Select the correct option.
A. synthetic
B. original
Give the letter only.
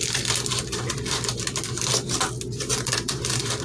B